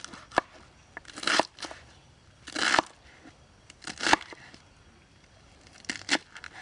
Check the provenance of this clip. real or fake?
real